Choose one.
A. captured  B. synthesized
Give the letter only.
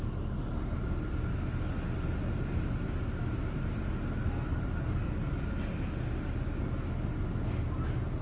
A